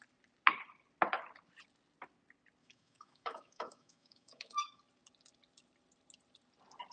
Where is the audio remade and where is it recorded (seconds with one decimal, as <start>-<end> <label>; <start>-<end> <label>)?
0.0-2.6 recorded; 2.6-4.8 remade; 4.8-6.9 recorded